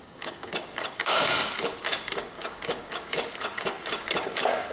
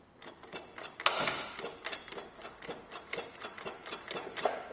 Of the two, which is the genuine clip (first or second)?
second